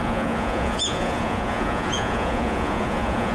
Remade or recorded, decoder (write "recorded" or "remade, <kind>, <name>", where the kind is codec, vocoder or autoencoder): remade, vocoder, Vocos